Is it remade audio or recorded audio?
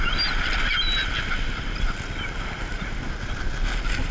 recorded